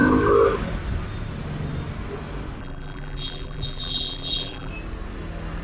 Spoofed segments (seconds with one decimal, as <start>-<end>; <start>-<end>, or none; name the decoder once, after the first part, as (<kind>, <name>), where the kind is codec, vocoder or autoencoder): 2.6-4.7 (vocoder, BigVGAN v2)